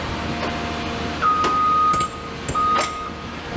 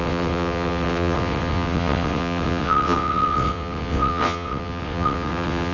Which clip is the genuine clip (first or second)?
first